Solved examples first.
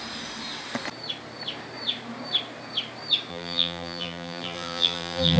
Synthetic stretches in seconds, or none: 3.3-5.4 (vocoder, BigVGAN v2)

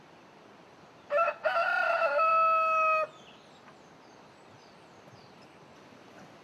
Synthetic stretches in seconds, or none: 0.0-2.3 (vocoder, BigVGAN v2); 4.5-6.4

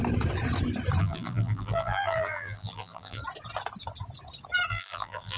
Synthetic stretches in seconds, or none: 1.0-3.2 (vocoder, BigVGAN v2); 4.7-5.4

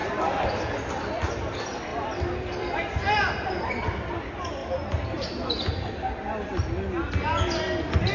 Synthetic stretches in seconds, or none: 0.0-1.0 (vocoder, BigVGAN v2); 1.9-3.6

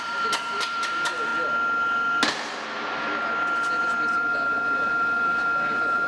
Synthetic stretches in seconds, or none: 0.0-1.3 (vocoder, BigVGAN v2); 3.8-6.1

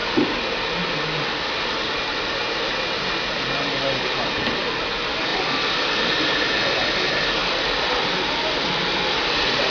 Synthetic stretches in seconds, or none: 5.3-6.2 (vocoder, BigVGAN v2); 7.4-8.2

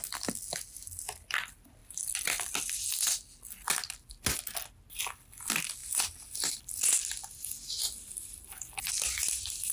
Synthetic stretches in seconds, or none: none